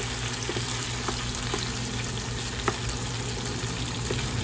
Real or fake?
real